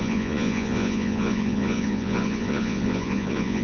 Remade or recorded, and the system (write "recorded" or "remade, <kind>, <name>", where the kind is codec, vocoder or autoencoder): remade, vocoder, Vocos